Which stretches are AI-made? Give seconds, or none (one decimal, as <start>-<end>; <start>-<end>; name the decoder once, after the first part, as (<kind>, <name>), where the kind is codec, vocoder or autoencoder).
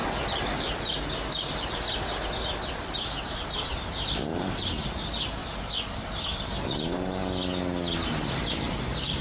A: 2.7-5.4 (vocoder, BigVGAN v2); 6.1-7.2; 8.5-9.2